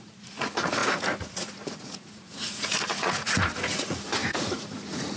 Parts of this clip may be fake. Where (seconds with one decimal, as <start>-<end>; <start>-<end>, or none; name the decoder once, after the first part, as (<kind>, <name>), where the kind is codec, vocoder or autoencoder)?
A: 0.0-5.2 (vocoder, Vocos)